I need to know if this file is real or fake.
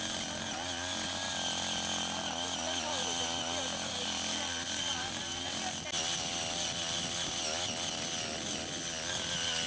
real